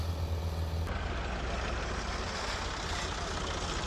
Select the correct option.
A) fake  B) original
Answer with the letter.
B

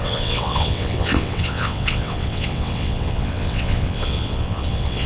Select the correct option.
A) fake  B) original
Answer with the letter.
A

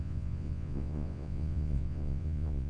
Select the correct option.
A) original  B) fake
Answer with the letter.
B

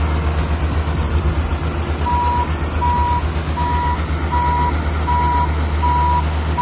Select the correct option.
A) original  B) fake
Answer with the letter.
A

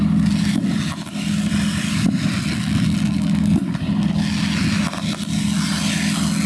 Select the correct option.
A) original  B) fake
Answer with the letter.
A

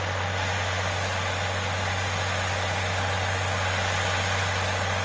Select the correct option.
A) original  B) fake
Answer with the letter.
A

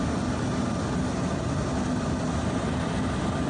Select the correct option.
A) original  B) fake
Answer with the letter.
A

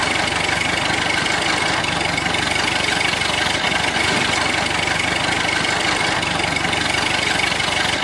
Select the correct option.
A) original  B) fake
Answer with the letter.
A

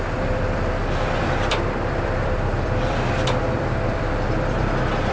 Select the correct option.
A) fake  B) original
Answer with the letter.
A